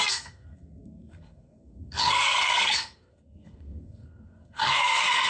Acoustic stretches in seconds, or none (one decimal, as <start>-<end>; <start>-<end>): none